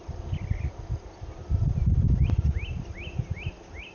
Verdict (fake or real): real